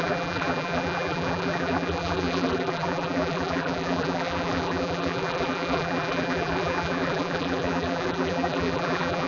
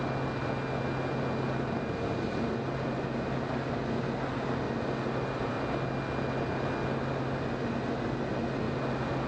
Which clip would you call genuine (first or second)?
second